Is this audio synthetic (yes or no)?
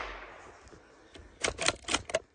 no